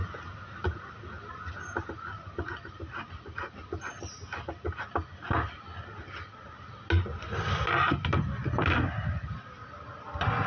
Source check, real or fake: real